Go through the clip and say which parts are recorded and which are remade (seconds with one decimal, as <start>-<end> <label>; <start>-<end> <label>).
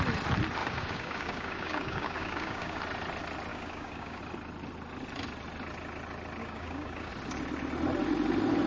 0.0-0.6 recorded; 0.6-2.8 remade; 2.8-3.5 recorded; 3.5-4.2 remade; 4.2-6.4 recorded; 6.4-7.1 remade; 7.1-8.7 recorded